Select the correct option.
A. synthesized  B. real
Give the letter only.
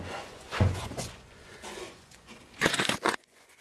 A